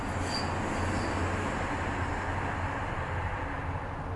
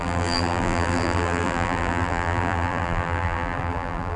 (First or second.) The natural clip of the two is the first